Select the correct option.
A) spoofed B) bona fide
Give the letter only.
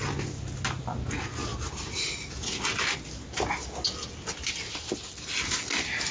B